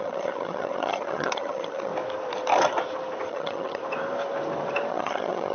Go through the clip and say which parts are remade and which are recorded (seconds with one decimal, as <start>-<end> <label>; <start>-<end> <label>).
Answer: 0.0-1.9 remade; 1.9-3.3 recorded; 3.3-3.8 remade; 3.8-4.9 recorded; 4.9-5.5 remade

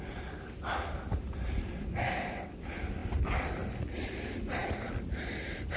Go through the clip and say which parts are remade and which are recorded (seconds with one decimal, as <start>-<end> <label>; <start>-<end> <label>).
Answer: 0.0-5.8 recorded

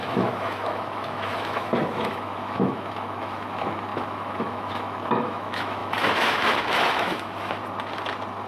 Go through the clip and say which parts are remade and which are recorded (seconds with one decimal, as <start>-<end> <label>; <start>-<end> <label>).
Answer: 0.0-7.6 remade; 7.6-8.5 recorded

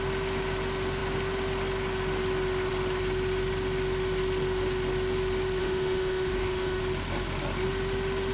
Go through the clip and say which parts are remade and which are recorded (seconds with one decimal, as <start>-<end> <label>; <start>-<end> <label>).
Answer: 0.0-5.6 recorded; 5.6-6.8 remade; 6.8-8.3 recorded